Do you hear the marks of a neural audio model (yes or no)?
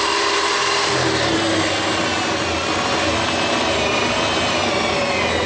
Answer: no